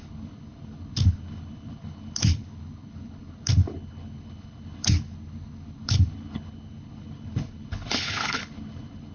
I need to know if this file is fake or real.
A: fake